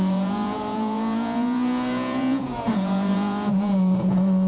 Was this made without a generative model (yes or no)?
no